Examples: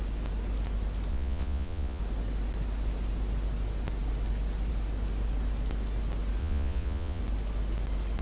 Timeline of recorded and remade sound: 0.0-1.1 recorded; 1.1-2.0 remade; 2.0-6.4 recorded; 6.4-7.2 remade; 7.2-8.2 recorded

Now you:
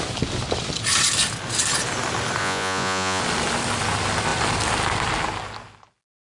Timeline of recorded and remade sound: 0.0-2.4 recorded; 2.4-3.2 remade; 3.2-6.3 recorded

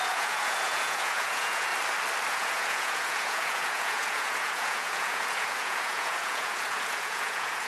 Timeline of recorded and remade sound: 0.0-1.7 remade; 1.7-2.3 recorded; 2.3-7.7 remade

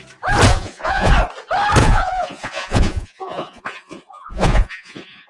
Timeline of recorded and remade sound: 0.0-0.5 recorded; 0.5-1.1 remade; 1.1-1.8 recorded; 1.8-5.3 remade

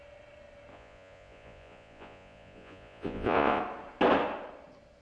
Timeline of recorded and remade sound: 0.0-0.7 recorded; 0.7-3.6 remade; 3.6-5.0 recorded

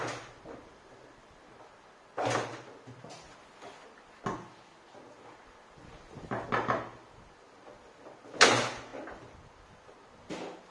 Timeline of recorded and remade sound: 0.0-10.7 recorded

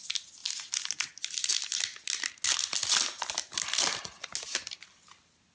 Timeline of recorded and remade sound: 0.0-5.5 recorded